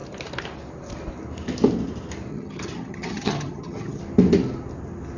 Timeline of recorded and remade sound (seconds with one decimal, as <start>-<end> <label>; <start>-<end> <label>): 0.0-2.3 recorded; 2.3-4.0 remade; 4.0-5.2 recorded

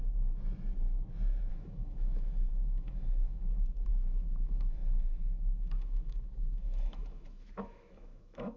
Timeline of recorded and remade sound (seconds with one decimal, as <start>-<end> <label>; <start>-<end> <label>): 0.0-1.5 recorded; 1.5-8.6 remade

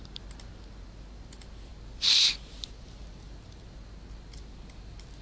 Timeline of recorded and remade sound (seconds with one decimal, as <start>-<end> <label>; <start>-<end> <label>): 0.0-5.2 recorded